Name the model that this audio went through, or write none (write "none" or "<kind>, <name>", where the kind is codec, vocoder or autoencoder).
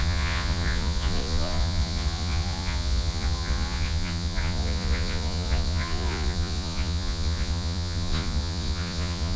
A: vocoder, Vocos